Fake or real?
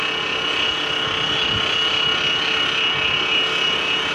real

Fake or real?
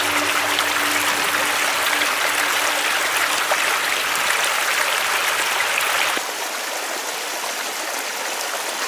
real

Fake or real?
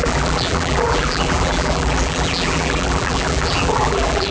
fake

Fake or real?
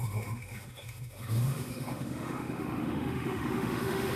fake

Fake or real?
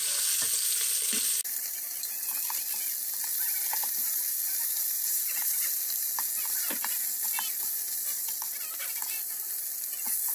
real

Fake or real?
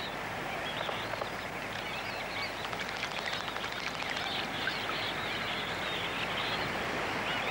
real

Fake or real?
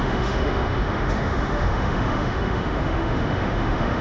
fake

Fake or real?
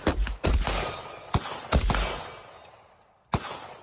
real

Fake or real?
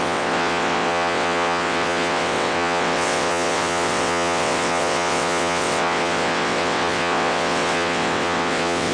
fake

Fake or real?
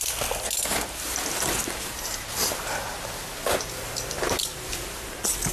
real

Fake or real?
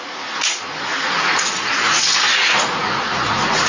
fake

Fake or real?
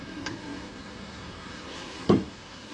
fake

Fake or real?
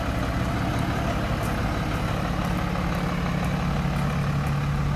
real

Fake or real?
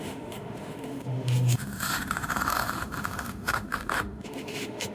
fake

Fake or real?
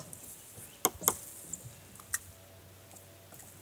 real